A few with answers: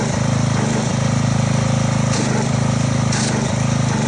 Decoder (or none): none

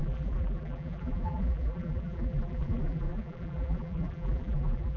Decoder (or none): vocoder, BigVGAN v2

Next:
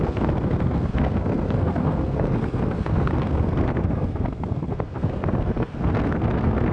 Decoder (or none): codec, SNAC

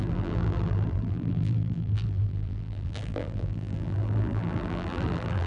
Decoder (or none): vocoder, BigVGAN v2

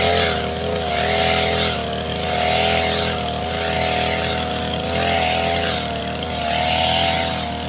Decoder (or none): none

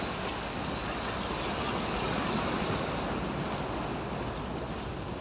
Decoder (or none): none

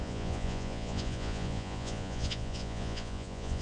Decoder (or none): vocoder, Vocos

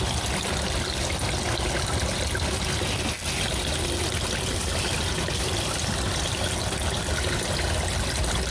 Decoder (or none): none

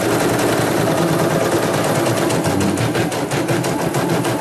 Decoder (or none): none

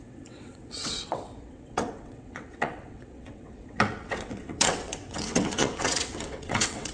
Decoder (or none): vocoder, WaveNeXt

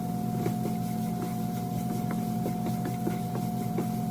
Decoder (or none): none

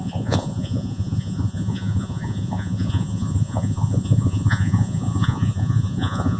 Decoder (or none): vocoder, Vocos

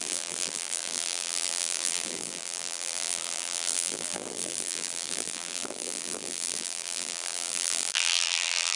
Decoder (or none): vocoder, BigVGAN v2